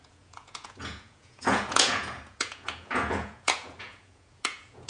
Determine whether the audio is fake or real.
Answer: fake